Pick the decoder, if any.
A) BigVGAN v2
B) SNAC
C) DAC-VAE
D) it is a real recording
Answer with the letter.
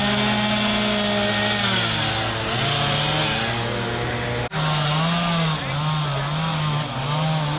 D